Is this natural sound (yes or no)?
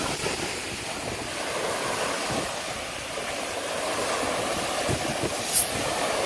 yes